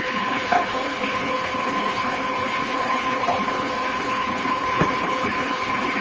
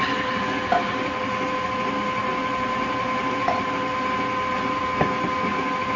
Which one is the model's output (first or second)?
first